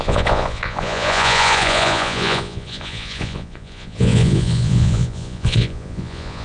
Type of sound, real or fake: fake